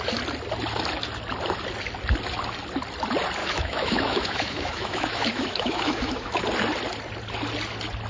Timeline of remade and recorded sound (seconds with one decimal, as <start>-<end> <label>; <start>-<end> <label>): 0.0-3.4 recorded; 3.4-6.4 remade; 6.4-8.1 recorded